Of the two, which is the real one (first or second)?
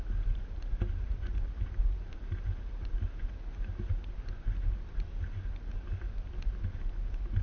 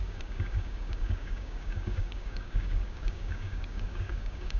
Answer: first